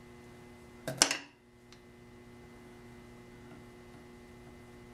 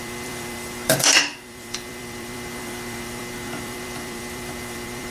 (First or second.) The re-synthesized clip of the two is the second